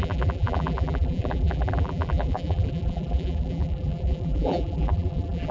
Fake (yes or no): yes